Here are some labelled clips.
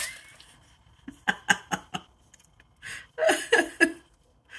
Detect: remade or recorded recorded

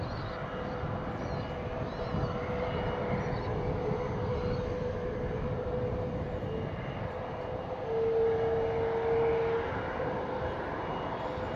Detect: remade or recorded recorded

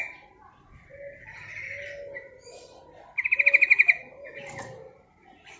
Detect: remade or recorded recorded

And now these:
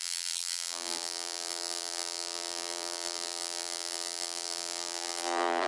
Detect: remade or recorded remade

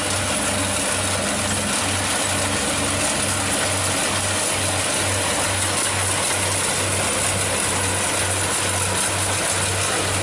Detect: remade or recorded recorded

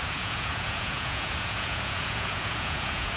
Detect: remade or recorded remade